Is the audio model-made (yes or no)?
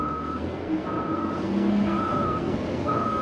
yes